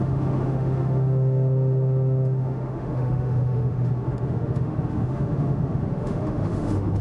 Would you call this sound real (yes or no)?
no